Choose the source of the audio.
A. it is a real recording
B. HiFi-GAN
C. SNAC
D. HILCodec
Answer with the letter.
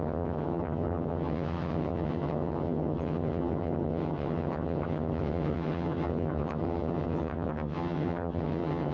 B